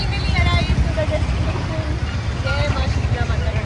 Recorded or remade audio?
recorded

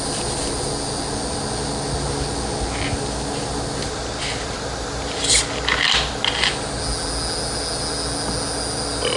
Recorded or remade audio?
recorded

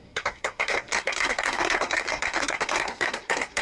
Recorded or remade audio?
remade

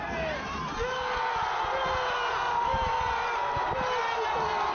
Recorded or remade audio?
recorded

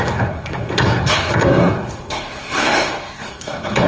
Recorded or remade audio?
remade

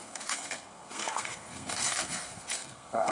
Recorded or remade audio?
remade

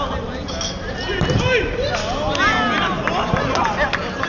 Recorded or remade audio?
recorded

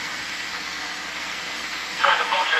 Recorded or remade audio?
remade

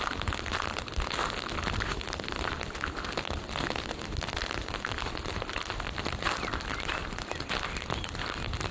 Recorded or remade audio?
recorded